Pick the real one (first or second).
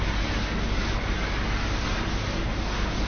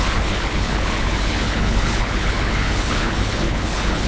first